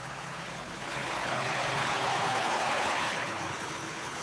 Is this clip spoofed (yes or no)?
yes